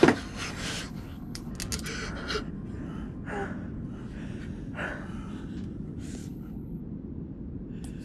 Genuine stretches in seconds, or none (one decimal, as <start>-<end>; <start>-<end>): 0.0-0.9; 1.5-6.2; 6.8-8.0